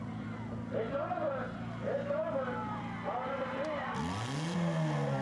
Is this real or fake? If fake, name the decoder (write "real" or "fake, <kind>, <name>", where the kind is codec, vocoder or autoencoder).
real